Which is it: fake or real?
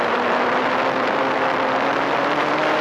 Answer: fake